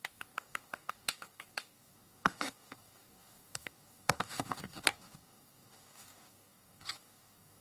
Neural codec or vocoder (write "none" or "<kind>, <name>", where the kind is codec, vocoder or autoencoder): codec, DAC